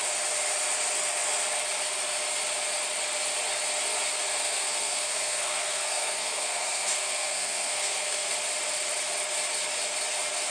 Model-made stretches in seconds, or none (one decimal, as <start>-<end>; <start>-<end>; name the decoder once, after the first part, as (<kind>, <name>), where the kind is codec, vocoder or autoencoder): 4.3-8.3 (codec, SNAC)